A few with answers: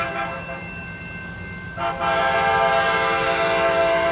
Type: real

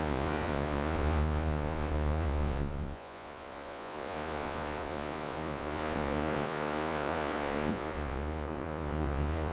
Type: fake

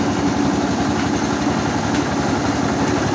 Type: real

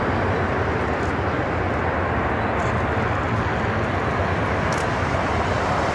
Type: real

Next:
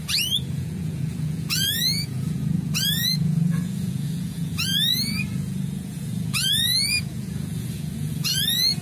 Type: fake